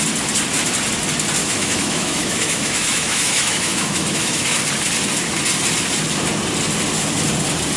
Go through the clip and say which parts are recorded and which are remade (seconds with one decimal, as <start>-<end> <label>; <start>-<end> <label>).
0.0-1.4 recorded; 1.4-4.6 remade; 4.6-7.8 recorded